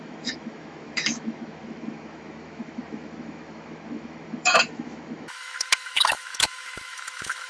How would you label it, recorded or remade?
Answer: remade